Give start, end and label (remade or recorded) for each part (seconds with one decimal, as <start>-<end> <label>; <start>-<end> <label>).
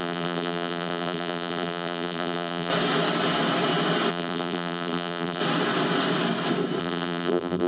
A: 0.0-2.7 remade; 2.7-4.1 recorded; 4.1-5.4 remade; 5.4-6.8 recorded; 6.8-7.7 remade